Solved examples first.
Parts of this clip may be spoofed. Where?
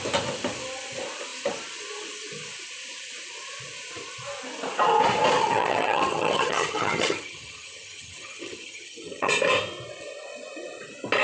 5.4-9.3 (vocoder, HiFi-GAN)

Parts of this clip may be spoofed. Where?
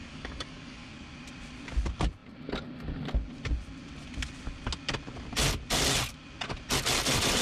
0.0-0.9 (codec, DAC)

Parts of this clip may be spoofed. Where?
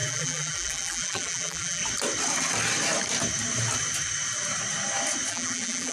0.0-1.8 (vocoder, BigVGAN v2); 5.3-5.9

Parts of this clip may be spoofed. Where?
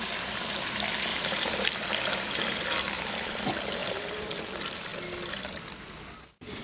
1.1-1.7 (vocoder, BigVGAN v2); 3.8-4.4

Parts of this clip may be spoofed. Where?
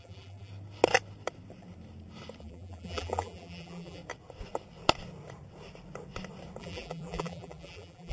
0.0-0.5 (vocoder, BigVGAN v2); 2.4-4.0; 6.6-8.1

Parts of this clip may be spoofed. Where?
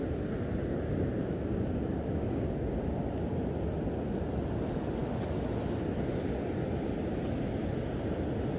1.2-3.0 (codec, DAC)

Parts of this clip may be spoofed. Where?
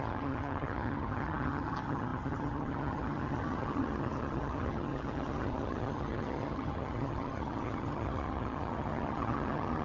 0.0-9.8 (vocoder, HiFi-GAN)